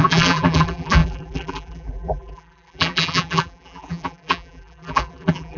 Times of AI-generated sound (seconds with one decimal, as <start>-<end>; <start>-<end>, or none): 0.0-5.6